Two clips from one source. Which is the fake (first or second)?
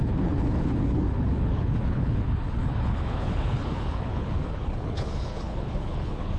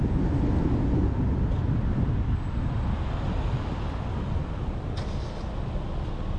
first